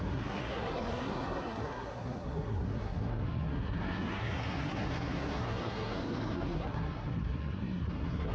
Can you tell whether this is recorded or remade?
remade